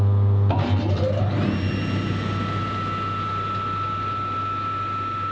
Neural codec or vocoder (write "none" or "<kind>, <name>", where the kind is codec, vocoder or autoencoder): none